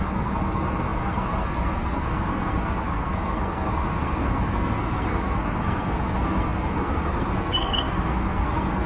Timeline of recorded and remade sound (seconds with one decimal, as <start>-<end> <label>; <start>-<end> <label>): 0.0-8.9 remade